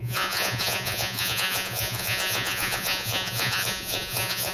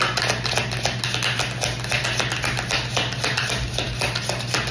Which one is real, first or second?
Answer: second